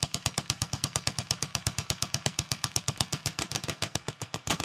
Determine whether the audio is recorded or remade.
remade